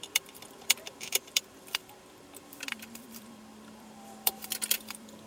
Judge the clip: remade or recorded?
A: remade